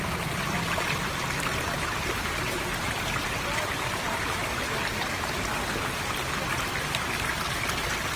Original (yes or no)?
yes